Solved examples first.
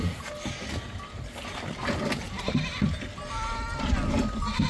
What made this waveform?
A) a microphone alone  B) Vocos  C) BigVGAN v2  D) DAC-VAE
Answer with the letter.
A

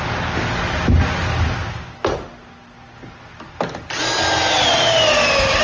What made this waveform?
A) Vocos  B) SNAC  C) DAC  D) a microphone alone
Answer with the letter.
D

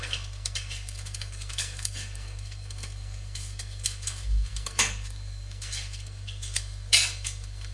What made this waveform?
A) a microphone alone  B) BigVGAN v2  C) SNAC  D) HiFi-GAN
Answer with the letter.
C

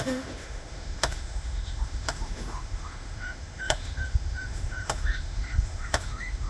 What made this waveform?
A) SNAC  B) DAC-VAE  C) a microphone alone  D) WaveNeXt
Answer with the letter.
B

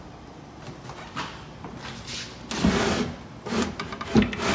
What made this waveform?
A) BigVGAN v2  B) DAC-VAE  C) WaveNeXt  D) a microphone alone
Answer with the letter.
D